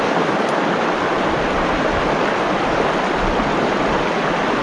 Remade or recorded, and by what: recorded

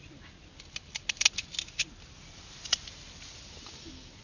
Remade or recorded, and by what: recorded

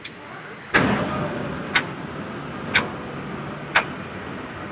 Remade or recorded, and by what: recorded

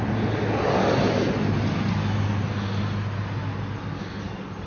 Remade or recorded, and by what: recorded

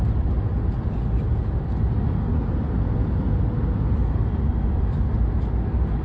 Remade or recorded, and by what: recorded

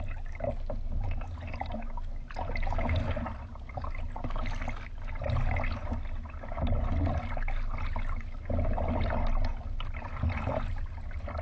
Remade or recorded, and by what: recorded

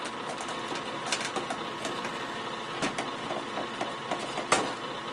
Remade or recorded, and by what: recorded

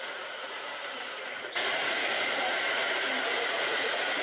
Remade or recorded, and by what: remade, vocoder, Vocos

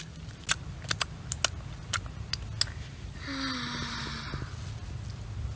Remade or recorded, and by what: recorded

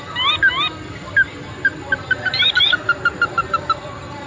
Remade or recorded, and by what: recorded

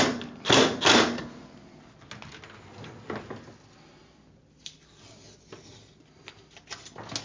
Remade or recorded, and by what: recorded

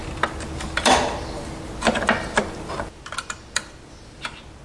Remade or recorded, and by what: recorded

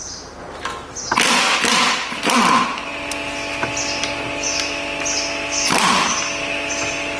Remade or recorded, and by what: recorded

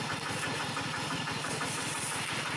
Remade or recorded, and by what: recorded